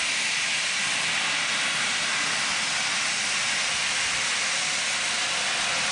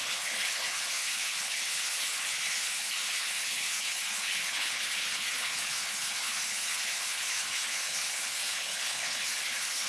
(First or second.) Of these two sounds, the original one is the first